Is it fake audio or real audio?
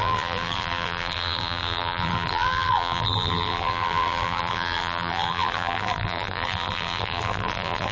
fake